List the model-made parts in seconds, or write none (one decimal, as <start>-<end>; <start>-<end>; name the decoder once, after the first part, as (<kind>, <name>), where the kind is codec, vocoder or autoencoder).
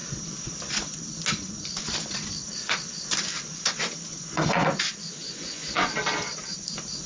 4.1-4.7 (vocoder, Vocos); 5.2-5.9